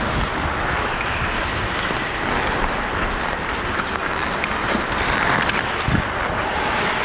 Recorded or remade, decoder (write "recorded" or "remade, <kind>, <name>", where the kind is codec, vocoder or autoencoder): recorded